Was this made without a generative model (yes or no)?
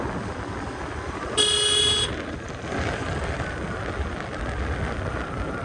yes